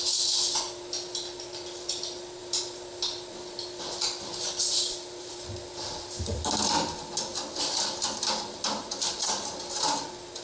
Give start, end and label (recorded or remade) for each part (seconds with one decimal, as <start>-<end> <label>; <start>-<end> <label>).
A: 0.0-4.6 recorded; 4.6-5.3 remade; 5.3-10.4 recorded